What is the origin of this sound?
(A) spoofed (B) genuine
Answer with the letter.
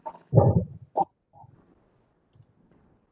B